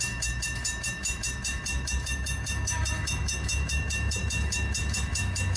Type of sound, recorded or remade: remade